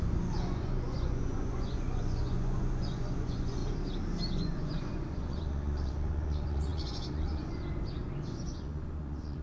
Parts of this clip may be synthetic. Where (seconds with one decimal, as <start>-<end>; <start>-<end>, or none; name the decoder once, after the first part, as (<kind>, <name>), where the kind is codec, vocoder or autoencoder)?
0.0-3.6 (vocoder, Vocos); 4.3-9.4